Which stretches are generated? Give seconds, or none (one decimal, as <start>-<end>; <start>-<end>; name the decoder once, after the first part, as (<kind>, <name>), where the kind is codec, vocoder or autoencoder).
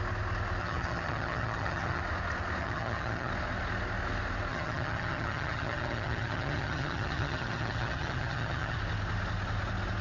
0.6-2.0 (vocoder, HiFi-GAN); 2.6-3.3; 4.5-8.8